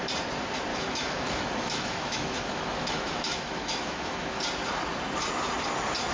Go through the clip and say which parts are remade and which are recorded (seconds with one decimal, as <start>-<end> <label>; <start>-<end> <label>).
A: 0.0-0.7 recorded; 0.7-4.4 remade; 4.4-6.1 recorded